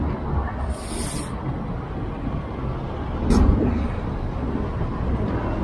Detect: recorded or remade recorded